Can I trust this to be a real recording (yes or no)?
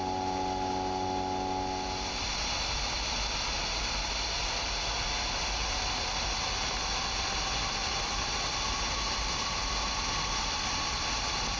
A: yes